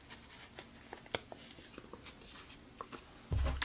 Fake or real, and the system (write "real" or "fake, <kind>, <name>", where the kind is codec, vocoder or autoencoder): real